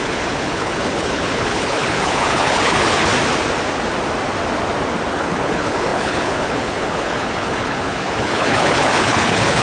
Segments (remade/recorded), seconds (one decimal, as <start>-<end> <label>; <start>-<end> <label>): 0.0-3.1 remade; 3.1-5.1 recorded; 5.1-9.6 remade